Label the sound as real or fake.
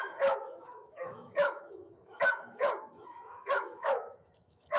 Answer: fake